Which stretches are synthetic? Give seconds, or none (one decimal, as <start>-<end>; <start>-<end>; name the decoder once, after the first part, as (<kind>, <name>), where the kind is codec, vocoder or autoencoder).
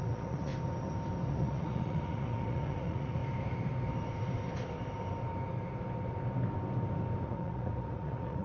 0.0-0.5 (vocoder, Vocos); 1.3-3.2; 7.2-8.4